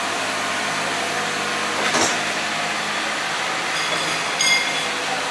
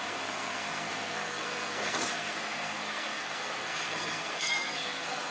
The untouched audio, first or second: first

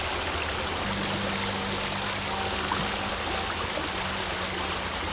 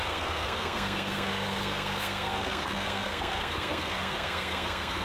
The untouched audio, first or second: first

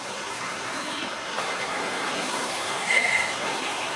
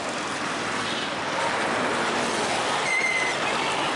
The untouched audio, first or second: second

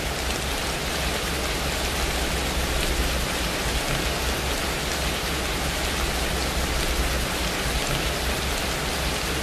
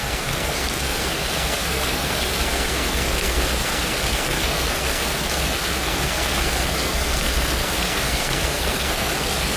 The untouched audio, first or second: first